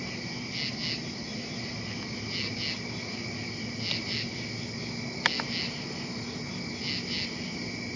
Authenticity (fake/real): real